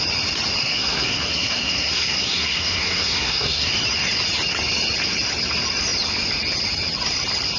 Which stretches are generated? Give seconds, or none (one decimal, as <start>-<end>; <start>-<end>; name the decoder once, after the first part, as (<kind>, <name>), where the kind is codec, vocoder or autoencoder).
0.6-3.7 (codec, SNAC)